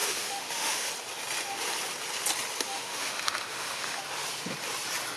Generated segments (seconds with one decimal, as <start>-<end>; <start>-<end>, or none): 0.0-0.9; 2.7-4.0